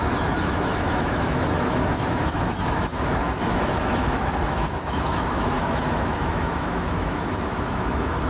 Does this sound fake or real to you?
fake